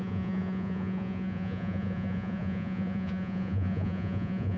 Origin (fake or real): fake